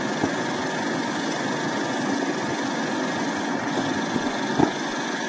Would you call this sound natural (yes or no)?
no